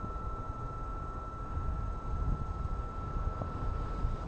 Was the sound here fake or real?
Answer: real